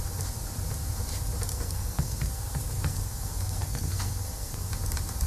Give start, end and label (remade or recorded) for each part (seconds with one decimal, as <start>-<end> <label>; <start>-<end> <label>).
0.0-1.5 recorded; 1.5-4.7 remade; 4.7-5.3 recorded